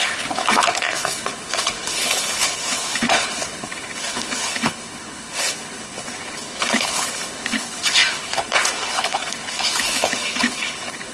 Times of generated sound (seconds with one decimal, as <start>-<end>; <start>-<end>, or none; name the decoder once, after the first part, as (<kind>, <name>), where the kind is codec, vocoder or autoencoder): 0.0-11.1 (codec, HILCodec)